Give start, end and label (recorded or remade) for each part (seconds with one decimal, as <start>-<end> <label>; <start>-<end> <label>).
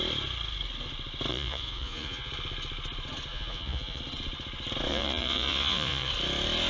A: 0.0-1.3 recorded; 1.3-2.3 remade; 2.3-3.3 recorded; 3.3-4.0 remade; 4.0-4.9 recorded; 4.9-6.1 remade; 6.1-6.7 recorded